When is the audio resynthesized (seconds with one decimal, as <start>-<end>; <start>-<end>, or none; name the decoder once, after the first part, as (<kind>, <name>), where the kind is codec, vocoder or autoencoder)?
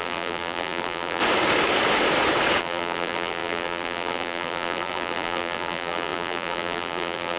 0.0-1.2 (vocoder, BigVGAN v2); 2.6-7.4